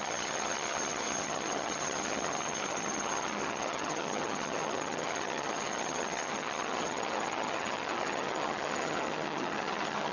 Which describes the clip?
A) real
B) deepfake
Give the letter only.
B